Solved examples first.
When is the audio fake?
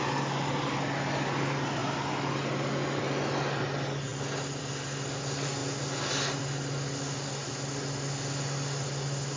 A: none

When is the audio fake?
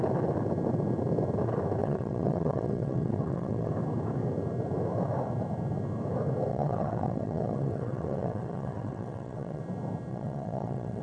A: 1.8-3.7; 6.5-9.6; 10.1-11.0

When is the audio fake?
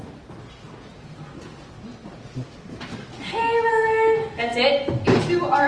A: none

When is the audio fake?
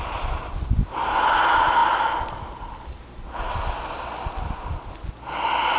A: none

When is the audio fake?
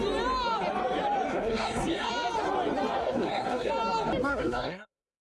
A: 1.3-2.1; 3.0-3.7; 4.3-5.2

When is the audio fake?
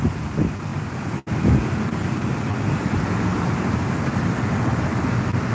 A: 3.3-4.0